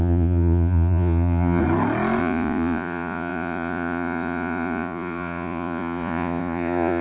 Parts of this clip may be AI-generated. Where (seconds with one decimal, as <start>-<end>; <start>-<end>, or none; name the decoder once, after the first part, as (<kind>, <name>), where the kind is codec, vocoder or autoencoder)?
0.0-1.6 (vocoder, Vocos); 2.2-7.0

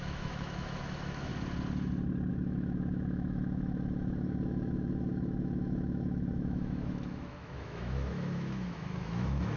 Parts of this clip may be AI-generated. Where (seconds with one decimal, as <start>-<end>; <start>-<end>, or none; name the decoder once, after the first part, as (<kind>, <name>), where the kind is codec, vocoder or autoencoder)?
0.0-1.3 (autoencoder, DAC-VAE); 2.3-9.6

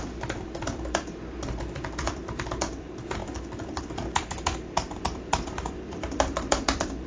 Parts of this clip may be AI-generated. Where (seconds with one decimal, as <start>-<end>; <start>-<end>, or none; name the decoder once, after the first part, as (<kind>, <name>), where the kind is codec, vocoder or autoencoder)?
0.0-7.1 (vocoder, BigVGAN v2)

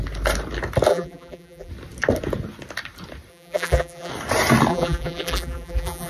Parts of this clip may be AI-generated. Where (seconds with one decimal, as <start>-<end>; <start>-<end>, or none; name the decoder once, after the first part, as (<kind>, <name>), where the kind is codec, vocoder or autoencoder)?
0.9-1.7 (vocoder, BigVGAN v2); 3.3-4.1; 4.7-6.1